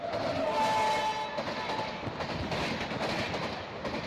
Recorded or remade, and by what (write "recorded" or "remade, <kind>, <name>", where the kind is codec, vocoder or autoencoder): recorded